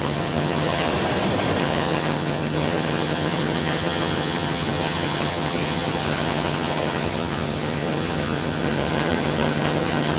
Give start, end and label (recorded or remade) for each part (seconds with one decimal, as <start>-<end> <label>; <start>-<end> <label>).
0.0-0.9 remade; 0.9-1.6 recorded; 1.6-10.2 remade